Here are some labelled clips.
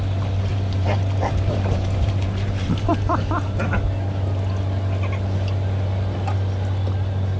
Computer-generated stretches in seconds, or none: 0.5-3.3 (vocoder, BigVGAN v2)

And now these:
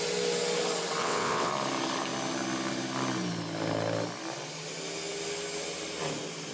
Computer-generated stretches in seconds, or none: 1.0-1.5 (vocoder, WaveNeXt)

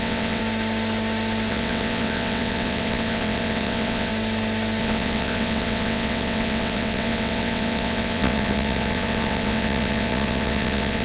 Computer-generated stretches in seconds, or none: 0.0-0.4 (vocoder, WaveNeXt); 1.5-4.1; 4.8-11.0

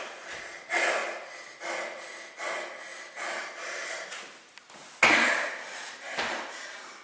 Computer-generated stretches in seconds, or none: none